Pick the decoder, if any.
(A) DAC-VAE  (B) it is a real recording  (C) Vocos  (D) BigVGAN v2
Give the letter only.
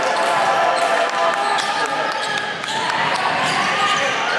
D